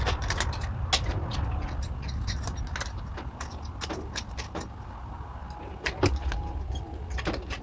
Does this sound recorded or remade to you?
recorded